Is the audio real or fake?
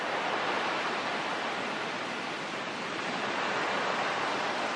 real